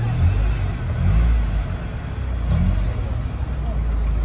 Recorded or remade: recorded